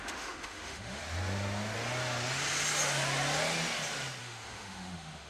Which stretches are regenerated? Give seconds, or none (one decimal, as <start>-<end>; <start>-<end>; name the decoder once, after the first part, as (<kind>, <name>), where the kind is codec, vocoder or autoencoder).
0.0-1.0 (autoencoder, DAC-VAE); 4.2-5.3